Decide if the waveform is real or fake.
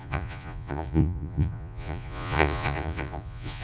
fake